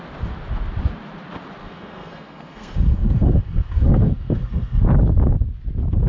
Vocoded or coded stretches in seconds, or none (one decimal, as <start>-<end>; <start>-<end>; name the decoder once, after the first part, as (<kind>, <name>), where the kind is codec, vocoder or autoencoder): 1.6-4.8 (codec, SNAC)